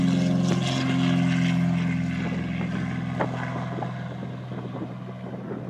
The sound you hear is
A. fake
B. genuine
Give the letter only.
B